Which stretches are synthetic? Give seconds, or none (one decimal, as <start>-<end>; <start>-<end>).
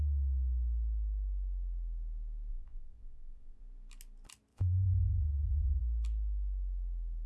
2.5-3.6; 4.5-5.8